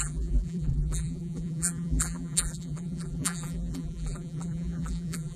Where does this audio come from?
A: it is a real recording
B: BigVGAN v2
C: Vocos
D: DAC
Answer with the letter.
B